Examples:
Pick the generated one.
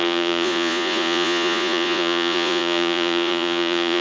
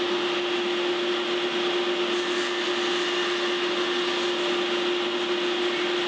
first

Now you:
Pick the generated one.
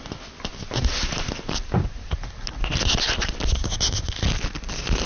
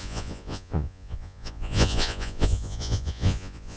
second